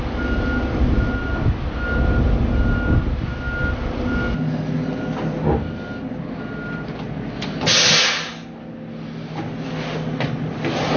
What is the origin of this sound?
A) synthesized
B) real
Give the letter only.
B